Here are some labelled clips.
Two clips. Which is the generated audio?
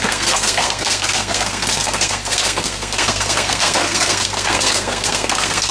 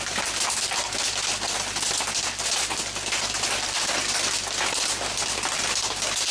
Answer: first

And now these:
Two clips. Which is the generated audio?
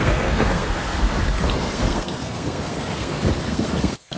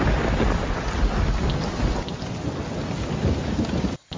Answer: first